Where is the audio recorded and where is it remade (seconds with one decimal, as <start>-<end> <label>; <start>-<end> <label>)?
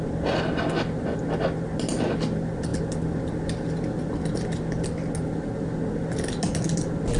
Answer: 0.0-7.2 recorded